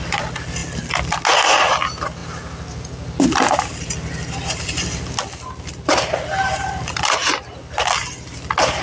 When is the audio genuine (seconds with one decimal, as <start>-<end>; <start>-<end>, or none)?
0.0-8.8